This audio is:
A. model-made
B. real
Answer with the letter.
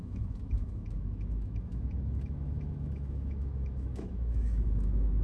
A